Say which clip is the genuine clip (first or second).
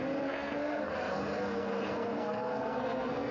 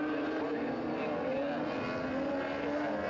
second